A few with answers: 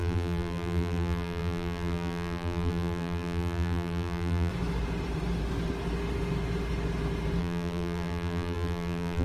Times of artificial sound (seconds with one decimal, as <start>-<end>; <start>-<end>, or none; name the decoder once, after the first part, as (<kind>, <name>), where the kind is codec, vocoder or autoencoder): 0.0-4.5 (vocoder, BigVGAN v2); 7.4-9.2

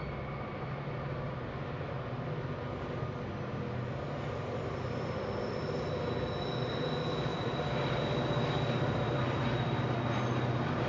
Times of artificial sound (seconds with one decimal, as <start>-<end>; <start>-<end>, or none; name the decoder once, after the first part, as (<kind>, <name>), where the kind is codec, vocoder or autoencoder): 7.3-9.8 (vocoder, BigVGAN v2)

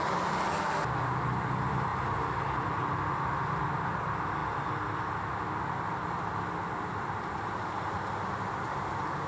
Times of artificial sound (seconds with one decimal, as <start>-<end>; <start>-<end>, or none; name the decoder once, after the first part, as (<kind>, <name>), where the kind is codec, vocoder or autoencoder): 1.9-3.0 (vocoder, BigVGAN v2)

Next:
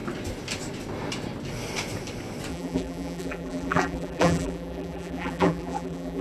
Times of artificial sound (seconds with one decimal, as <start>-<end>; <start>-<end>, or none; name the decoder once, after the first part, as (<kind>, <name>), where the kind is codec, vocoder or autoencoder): 2.5-6.2 (vocoder, BigVGAN v2)